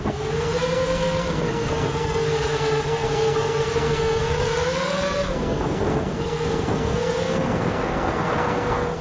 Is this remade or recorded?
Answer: remade